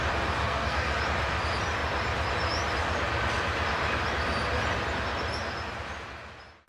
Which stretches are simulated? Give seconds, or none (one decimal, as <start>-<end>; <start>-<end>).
0.4-1.0